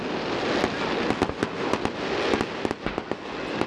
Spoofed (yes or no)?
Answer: no